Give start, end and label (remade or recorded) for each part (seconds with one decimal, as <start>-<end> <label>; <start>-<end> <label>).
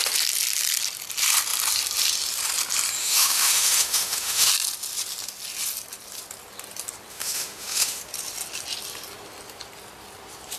0.0-3.0 recorded; 3.0-4.5 remade; 4.5-7.1 recorded; 7.1-8.0 remade; 8.0-10.6 recorded